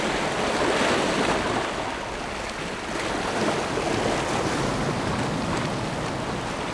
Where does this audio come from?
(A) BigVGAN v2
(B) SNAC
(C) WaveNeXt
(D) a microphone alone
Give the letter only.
D